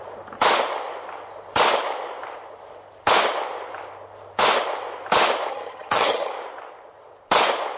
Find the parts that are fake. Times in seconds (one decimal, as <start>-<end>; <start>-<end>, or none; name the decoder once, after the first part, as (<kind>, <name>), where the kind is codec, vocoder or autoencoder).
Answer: 5.5-6.3 (vocoder, HiFi-GAN)